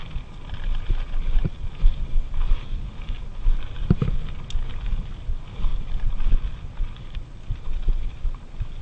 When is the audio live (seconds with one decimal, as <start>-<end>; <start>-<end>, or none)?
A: 0.0-8.8